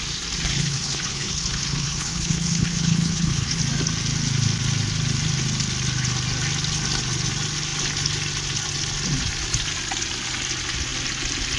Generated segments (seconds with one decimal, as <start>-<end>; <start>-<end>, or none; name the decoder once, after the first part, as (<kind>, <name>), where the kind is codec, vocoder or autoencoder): 0.5-3.6 (codec, HILCodec)